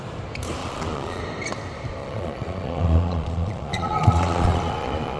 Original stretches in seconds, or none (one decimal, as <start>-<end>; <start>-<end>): 0.0-0.6; 1.2-2.0